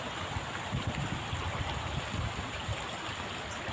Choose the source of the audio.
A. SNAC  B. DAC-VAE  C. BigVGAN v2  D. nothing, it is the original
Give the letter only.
D